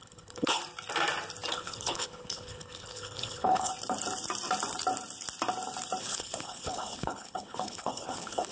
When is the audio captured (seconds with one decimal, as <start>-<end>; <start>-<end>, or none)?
0.6-1.5; 3.7-6.0